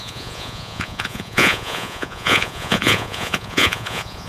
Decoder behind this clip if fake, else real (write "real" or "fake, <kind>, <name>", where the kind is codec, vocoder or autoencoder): fake, vocoder, Vocos